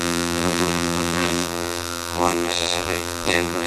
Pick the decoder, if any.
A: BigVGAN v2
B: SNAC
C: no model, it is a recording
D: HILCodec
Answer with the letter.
A